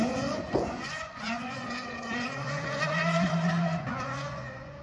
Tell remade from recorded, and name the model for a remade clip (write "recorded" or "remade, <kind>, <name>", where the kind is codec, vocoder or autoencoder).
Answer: remade, vocoder, Vocos